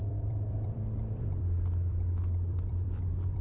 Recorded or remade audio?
remade